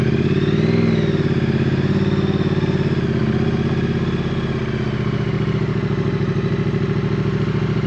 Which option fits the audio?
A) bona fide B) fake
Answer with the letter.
A